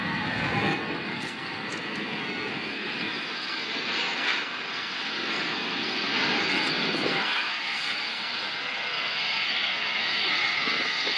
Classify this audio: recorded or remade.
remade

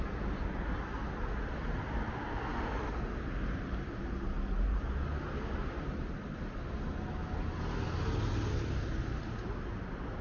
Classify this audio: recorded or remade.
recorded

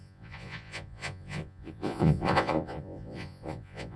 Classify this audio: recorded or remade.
remade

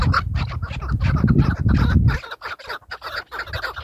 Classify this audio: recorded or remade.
recorded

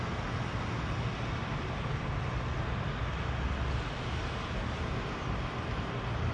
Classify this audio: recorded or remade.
recorded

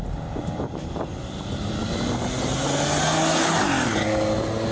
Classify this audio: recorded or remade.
recorded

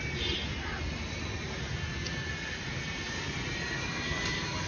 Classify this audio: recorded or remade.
recorded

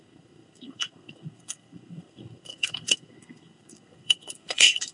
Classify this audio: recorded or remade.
remade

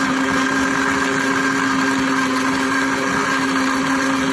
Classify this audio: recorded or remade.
recorded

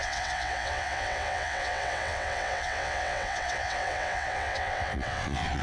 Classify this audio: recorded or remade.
remade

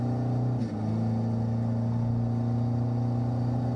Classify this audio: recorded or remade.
recorded